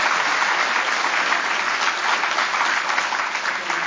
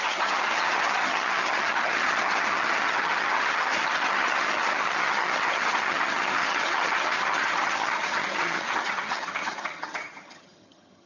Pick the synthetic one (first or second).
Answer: second